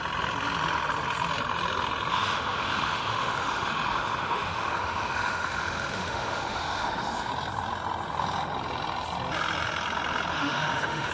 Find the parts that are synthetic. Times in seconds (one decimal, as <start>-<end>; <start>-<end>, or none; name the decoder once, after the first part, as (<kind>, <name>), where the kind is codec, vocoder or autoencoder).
2.1-7.3 (autoencoder, DAC-VAE); 10.3-11.1